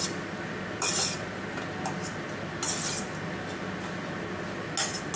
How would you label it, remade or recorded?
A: recorded